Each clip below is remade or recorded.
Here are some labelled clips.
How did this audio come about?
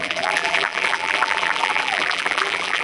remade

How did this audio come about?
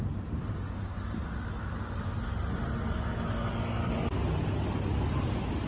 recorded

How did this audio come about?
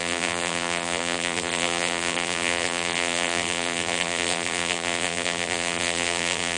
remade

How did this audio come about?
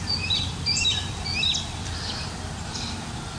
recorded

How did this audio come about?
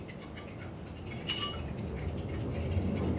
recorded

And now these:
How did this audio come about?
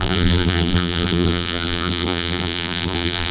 remade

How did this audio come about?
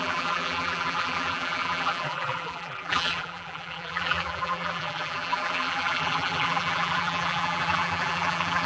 remade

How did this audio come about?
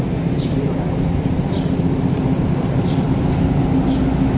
recorded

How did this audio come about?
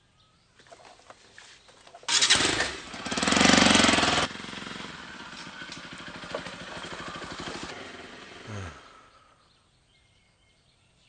recorded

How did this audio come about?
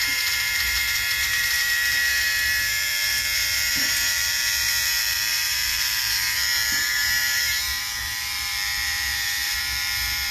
remade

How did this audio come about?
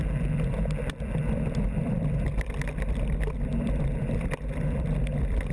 remade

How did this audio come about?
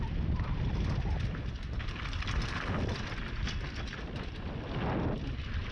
recorded